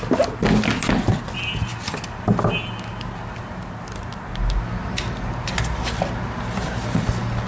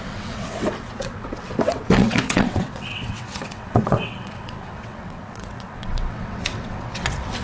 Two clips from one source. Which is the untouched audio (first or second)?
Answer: first